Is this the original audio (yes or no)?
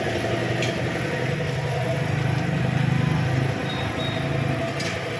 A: yes